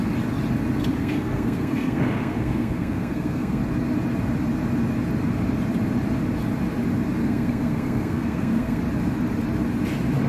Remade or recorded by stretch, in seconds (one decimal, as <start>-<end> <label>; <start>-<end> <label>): 0.0-1.0 recorded; 1.0-3.6 remade; 3.6-7.2 recorded; 7.2-8.8 remade; 8.8-10.3 recorded